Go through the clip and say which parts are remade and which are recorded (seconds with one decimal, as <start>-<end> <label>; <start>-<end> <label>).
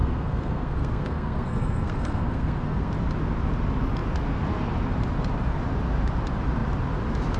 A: 0.0-2.9 remade; 2.9-7.4 recorded